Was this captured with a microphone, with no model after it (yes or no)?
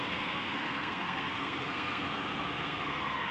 no